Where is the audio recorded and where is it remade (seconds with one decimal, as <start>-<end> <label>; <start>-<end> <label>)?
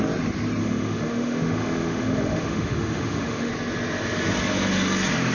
0.0-0.6 recorded; 0.6-3.5 remade; 3.5-5.3 recorded